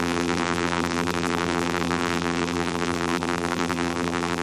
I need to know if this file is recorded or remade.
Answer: remade